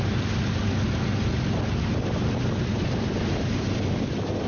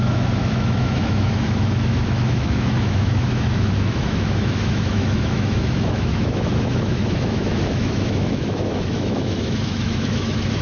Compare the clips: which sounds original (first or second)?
first